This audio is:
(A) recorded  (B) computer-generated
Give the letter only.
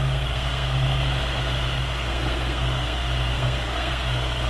B